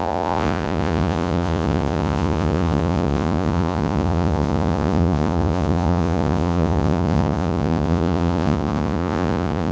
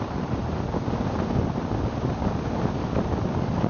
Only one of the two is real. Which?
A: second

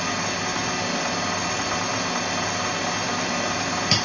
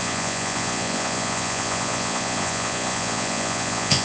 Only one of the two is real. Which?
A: first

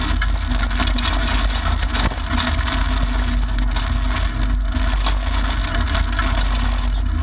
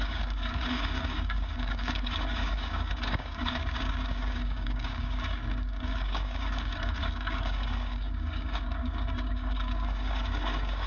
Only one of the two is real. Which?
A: first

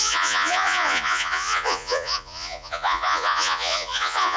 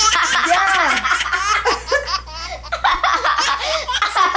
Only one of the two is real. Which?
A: second